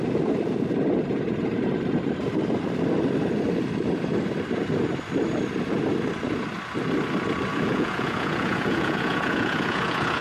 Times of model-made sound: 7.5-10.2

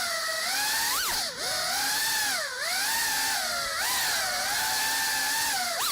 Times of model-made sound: none

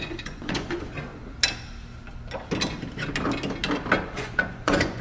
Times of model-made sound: 0.0-1.1; 4.1-5.0

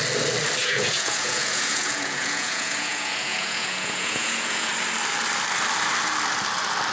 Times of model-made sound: 0.6-4.7

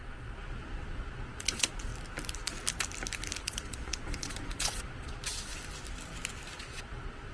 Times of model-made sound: 0.0-1.9; 3.4-5.5; 6.6-7.3